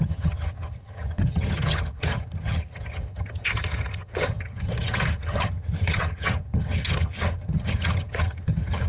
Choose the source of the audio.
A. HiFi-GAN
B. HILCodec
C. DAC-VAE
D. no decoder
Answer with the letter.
A